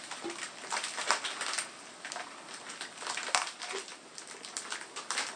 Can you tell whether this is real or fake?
real